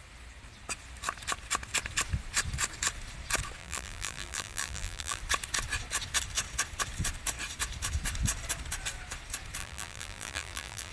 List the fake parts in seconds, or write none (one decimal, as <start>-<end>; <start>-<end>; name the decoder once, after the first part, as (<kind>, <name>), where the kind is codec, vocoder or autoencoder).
3.6-5.2 (vocoder, BigVGAN v2); 9.6-10.9